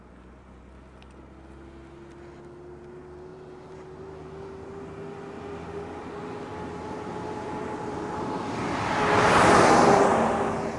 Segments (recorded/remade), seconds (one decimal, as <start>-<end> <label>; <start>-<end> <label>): 0.0-10.8 recorded